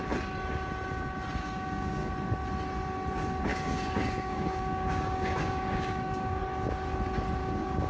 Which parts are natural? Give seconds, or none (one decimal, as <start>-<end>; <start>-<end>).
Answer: 0.0-1.4; 2.1-3.5; 6.4-7.4